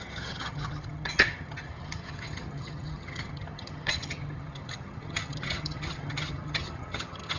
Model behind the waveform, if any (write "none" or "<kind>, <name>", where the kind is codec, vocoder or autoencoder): vocoder, HiFi-GAN